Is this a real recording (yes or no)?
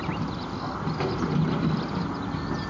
yes